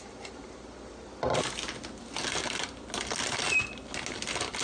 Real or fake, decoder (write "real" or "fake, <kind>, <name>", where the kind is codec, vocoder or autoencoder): real